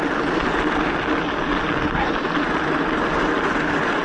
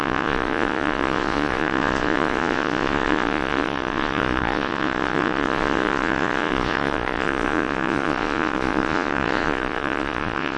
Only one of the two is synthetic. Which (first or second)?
second